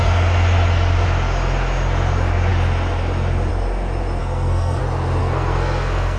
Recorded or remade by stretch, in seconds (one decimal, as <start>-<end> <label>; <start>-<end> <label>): 0.0-4.2 recorded; 4.2-4.8 remade; 4.8-5.2 recorded; 5.2-6.2 remade